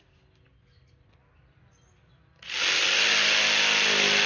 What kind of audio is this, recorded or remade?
recorded